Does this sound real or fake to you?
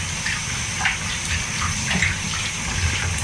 real